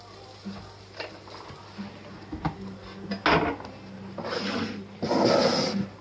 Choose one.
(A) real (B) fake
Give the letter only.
A